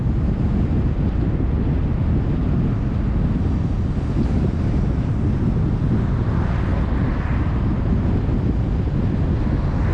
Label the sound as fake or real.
real